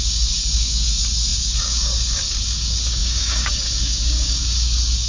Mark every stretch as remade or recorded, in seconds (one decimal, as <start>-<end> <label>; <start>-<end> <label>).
0.0-5.1 remade